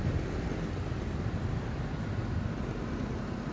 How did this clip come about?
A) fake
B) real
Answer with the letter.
B